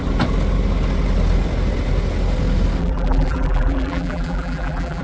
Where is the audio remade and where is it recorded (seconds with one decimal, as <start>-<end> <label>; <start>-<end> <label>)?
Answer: 0.0-2.8 recorded; 2.8-5.0 remade